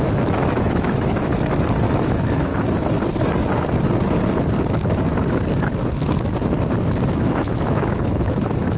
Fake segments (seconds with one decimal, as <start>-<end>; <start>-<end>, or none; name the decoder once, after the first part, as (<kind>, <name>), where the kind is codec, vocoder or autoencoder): 0.0-1.3 (autoencoder, DAC-VAE); 1.9-2.5; 7.2-8.8